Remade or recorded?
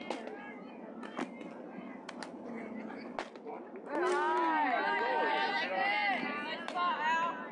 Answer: recorded